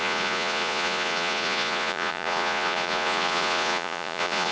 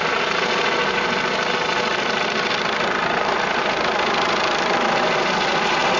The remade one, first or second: first